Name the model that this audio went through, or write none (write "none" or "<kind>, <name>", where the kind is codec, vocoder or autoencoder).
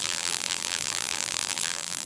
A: vocoder, BigVGAN v2